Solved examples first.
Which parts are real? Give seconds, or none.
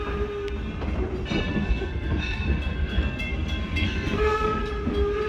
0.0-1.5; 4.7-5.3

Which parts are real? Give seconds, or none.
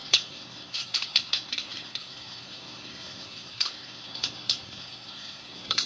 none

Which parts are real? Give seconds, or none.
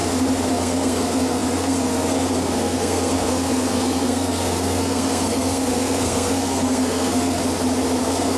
0.0-0.5; 7.4-8.0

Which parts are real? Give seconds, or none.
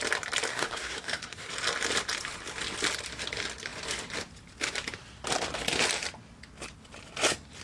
0.0-0.5; 1.5-7.6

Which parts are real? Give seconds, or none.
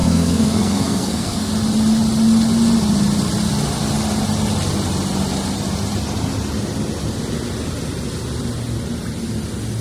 1.5-9.8